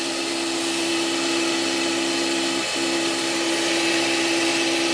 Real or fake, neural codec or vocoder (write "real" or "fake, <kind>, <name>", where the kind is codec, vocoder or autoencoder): real